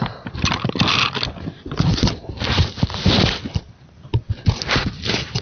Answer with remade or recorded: recorded